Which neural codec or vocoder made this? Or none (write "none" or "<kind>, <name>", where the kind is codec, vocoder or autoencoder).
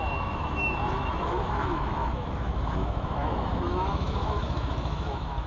autoencoder, DAC-VAE